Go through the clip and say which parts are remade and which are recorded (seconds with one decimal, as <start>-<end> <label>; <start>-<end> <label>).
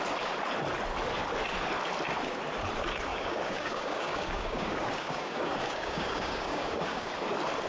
0.0-3.1 recorded; 3.1-7.1 remade; 7.1-7.7 recorded